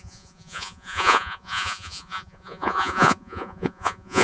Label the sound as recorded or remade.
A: remade